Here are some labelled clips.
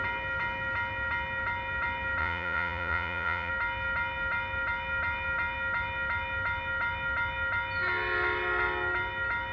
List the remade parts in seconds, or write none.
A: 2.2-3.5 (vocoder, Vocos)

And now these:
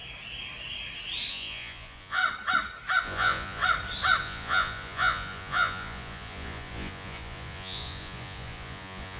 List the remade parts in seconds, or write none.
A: 1.3-2.2 (vocoder, Vocos); 3.0-3.6; 4.2-9.2

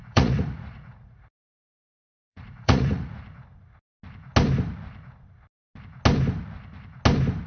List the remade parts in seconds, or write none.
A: 0.0-3.2 (vocoder, Vocos)

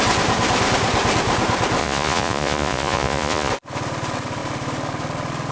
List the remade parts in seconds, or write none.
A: 1.8-3.5 (vocoder, Vocos)